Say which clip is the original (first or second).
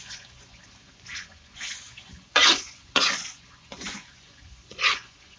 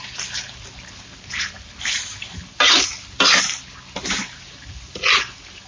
second